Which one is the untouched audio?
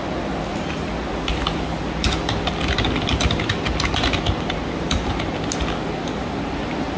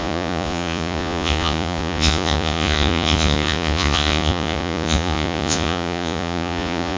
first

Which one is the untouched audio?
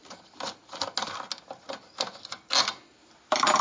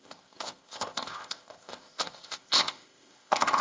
first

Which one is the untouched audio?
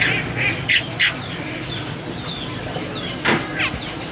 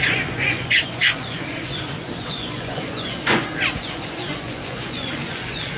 first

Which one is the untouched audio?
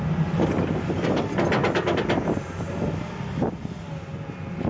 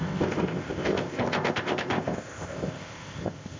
first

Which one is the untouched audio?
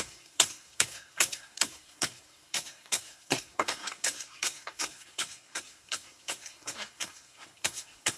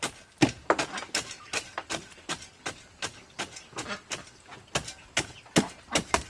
second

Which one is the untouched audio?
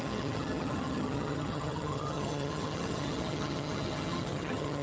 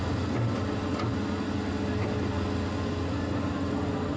second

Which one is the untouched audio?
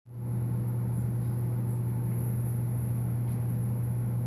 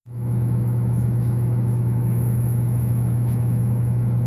first